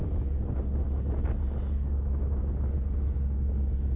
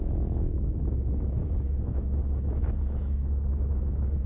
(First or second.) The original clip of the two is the first